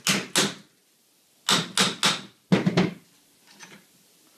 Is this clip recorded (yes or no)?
yes